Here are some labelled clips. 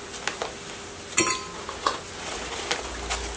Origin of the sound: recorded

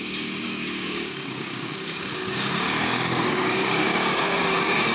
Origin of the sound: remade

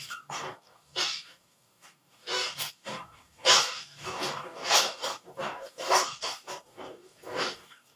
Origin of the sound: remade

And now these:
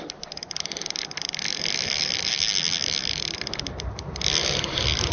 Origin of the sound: recorded